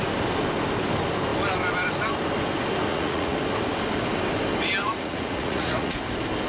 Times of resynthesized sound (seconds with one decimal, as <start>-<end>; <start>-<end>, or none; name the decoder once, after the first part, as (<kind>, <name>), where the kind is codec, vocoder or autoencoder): 2.9-3.4 (vocoder, Vocos); 4.8-6.0